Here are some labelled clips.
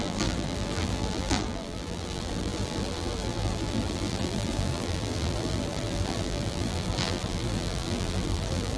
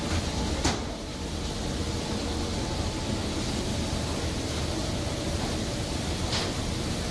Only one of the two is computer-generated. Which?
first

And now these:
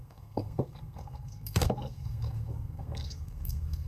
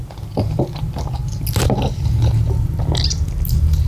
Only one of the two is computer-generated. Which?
first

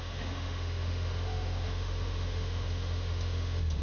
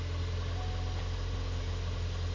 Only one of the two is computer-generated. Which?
first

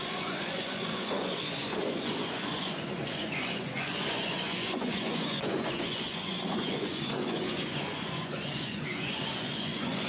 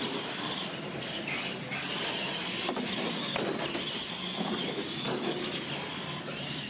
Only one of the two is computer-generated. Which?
first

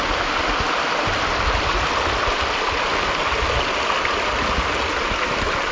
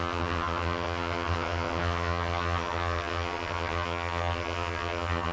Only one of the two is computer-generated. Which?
second